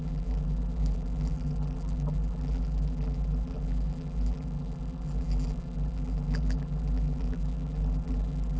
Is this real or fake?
fake